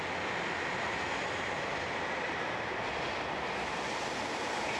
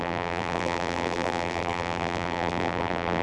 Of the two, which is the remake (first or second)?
second